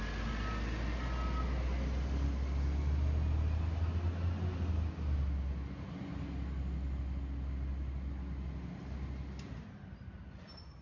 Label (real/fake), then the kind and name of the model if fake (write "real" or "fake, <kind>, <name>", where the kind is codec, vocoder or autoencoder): real